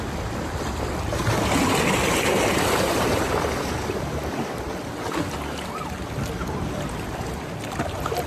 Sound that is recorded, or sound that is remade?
recorded